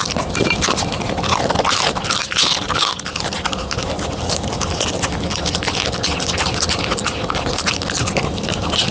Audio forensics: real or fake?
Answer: real